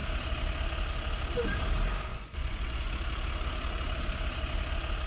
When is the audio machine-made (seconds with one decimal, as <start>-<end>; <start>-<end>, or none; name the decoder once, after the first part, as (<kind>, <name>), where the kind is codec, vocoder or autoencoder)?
2.1-2.9 (vocoder, Vocos)